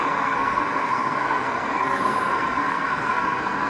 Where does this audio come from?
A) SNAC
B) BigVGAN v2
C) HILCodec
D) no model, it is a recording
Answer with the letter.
A